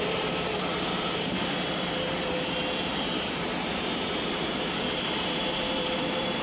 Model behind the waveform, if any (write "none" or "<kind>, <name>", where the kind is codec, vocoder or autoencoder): vocoder, BigVGAN v2